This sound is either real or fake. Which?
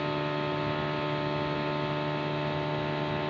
real